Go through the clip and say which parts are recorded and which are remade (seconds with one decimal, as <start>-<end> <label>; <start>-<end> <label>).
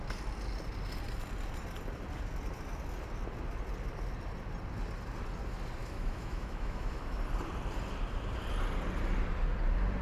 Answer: 0.0-5.8 recorded; 5.8-7.2 remade; 7.2-10.0 recorded